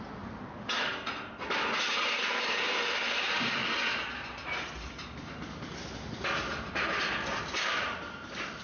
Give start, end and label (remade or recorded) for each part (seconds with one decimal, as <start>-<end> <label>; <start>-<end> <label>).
0.0-0.9 remade; 0.9-1.9 recorded; 1.9-3.6 remade; 3.6-6.7 recorded; 6.7-8.6 remade